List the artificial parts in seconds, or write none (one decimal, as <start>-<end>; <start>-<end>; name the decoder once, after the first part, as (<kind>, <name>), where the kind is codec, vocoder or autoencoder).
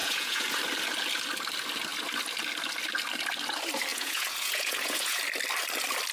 0.0-0.6 (vocoder, Vocos); 3.9-5.2